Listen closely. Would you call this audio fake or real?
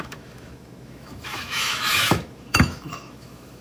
fake